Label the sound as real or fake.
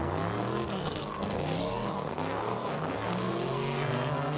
fake